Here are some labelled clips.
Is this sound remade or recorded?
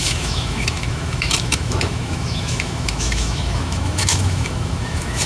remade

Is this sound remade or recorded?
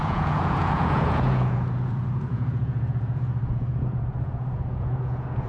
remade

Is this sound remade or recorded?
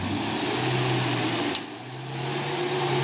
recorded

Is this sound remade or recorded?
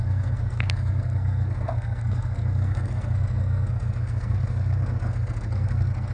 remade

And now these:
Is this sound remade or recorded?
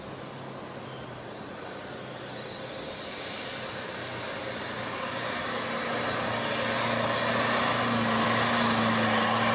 recorded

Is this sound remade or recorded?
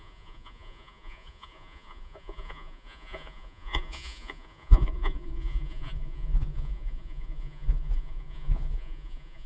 remade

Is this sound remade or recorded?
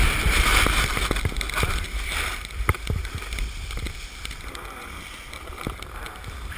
recorded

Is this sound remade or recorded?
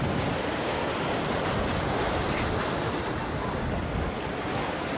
recorded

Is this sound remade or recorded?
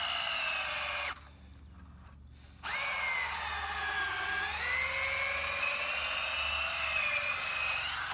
recorded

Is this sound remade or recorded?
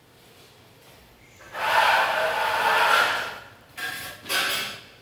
recorded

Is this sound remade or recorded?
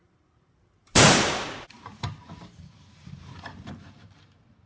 remade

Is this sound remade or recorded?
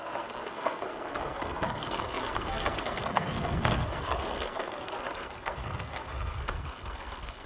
remade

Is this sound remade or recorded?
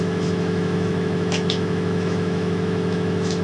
remade